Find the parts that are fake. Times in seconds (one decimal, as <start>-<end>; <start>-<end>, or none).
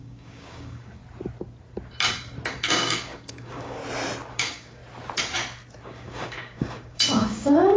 0.0-1.0; 2.5-3.8; 4.3-4.8; 5.8-7.8